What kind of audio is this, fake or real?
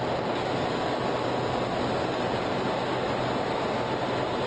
real